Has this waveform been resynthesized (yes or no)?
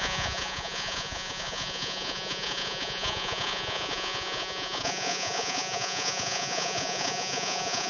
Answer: yes